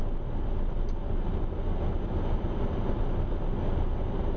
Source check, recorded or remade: recorded